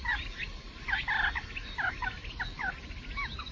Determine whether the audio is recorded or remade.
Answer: recorded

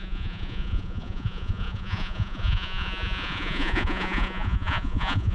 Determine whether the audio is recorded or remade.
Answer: remade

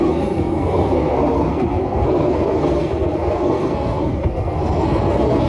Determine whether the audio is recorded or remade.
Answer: remade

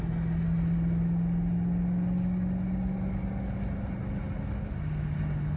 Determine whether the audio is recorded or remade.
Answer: recorded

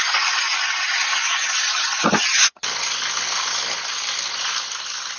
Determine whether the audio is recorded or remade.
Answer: recorded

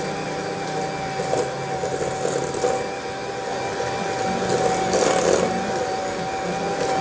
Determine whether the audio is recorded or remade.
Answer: recorded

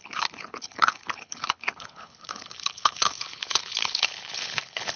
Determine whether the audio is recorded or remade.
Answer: remade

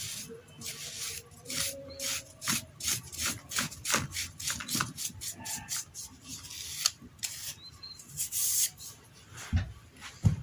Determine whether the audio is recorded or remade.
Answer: recorded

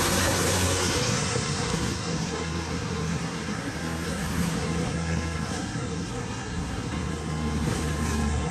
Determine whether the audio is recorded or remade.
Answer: remade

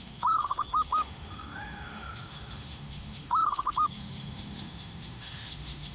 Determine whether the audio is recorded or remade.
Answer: remade